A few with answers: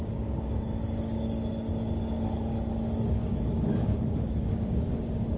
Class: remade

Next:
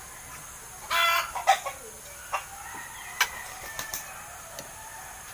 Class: recorded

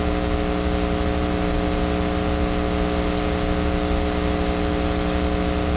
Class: recorded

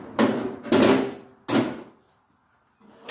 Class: recorded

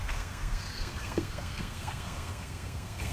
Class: remade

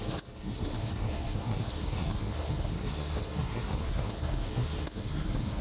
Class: remade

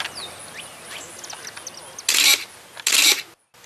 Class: recorded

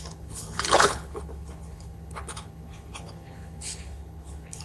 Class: remade